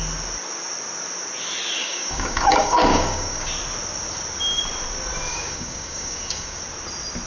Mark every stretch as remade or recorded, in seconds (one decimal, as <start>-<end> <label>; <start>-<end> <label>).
0.0-1.8 recorded; 1.8-3.5 remade; 3.5-5.3 recorded; 5.3-6.6 remade; 6.6-7.3 recorded